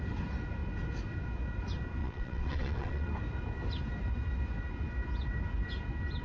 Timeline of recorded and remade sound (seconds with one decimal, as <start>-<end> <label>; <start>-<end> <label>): 0.0-2.0 recorded; 2.0-3.1 remade; 3.1-6.2 recorded